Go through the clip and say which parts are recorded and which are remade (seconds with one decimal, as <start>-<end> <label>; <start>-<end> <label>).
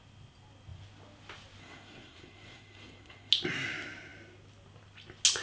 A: 0.0-1.6 recorded; 1.6-3.3 remade; 3.3-5.4 recorded